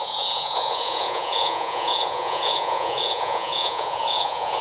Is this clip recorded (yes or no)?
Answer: no